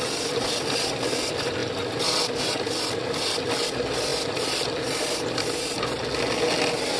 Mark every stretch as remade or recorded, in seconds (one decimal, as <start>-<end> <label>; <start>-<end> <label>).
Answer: 0.0-7.0 recorded